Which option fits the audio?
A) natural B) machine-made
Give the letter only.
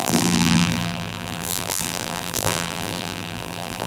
B